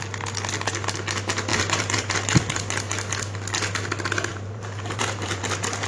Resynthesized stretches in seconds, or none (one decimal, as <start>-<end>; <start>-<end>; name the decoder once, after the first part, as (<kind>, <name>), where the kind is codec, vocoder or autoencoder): 1.5-2.1 (vocoder, BigVGAN v2); 4.3-5.4